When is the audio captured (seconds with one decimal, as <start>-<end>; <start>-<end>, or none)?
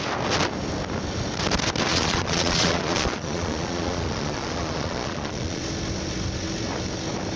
0.0-1.9; 5.6-7.4